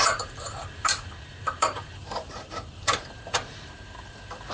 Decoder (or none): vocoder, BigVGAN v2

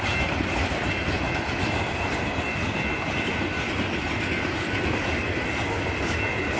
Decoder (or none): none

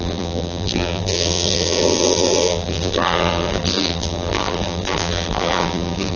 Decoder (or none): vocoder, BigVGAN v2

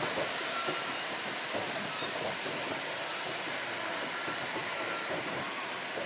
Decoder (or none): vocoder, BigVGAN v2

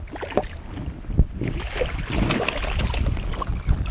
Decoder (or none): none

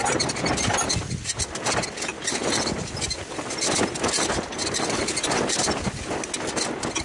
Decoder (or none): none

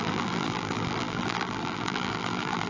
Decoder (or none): vocoder, BigVGAN v2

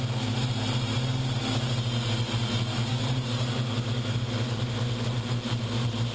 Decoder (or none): none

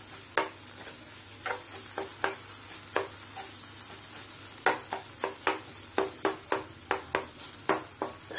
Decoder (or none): none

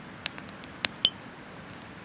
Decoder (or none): none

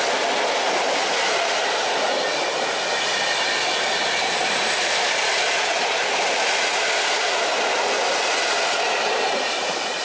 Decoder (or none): none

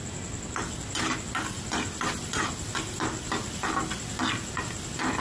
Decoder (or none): none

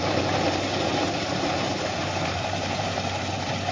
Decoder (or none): vocoder, BigVGAN v2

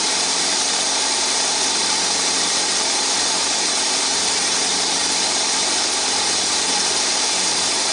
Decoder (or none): vocoder, BigVGAN v2